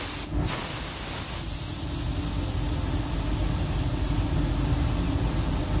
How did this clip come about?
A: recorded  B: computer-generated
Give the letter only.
A